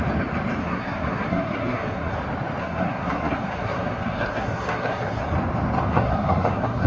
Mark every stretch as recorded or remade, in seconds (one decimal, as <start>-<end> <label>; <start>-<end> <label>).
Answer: 0.0-0.6 recorded; 0.6-2.1 remade; 2.1-2.6 recorded; 2.6-5.2 remade; 5.2-5.9 recorded; 5.9-6.9 remade